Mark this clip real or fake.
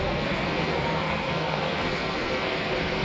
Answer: fake